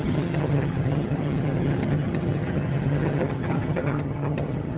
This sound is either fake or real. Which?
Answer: fake